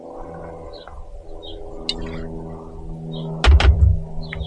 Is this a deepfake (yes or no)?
no